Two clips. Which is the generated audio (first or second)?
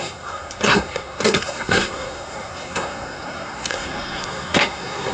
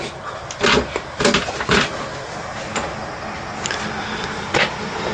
first